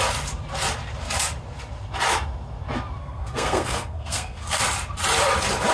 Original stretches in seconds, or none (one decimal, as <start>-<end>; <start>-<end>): 0.0-3.0; 4.6-5.7